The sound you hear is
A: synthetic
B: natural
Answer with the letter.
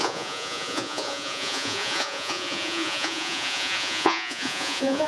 A